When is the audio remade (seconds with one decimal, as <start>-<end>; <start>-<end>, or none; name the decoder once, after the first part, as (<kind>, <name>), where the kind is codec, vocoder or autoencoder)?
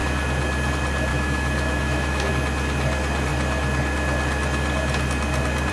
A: 1.1-2.3 (autoencoder, DAC-VAE)